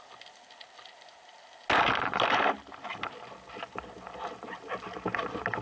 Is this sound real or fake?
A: real